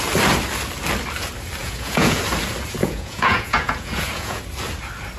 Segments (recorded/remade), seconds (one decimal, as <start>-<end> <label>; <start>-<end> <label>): 0.0-1.6 recorded; 1.6-2.2 remade; 2.2-2.8 recorded; 2.8-4.4 remade; 4.4-5.2 recorded